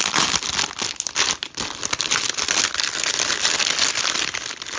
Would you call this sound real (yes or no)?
yes